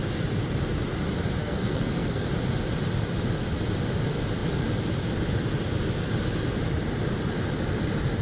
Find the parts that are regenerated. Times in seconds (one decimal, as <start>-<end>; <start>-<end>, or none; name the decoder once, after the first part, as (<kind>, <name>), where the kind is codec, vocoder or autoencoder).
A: 1.4-2.3 (codec, SNAC)